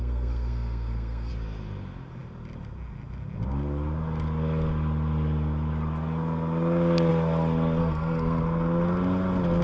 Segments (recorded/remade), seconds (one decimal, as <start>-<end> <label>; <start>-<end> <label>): 0.0-1.3 remade; 1.3-7.8 recorded; 7.8-8.4 remade; 8.4-9.6 recorded